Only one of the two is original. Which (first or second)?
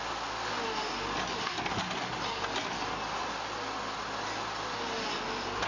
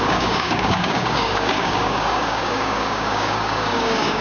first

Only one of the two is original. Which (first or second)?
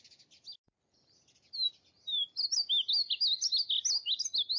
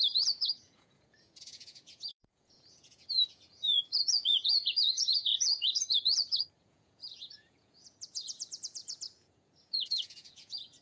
first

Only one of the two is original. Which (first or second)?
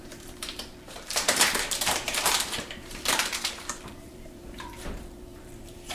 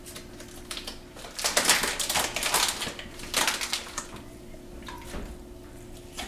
second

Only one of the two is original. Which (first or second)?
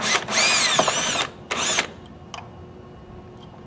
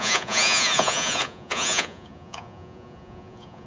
first